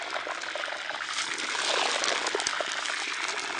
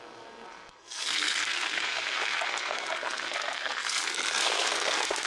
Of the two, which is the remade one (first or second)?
second